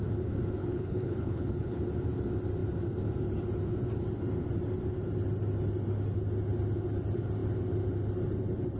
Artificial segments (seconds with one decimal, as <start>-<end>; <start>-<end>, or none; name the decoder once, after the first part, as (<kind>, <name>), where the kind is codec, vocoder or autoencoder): 0.6-1.8 (codec, HILCodec)